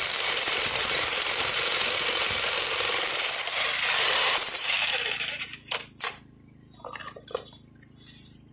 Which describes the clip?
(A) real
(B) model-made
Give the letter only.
B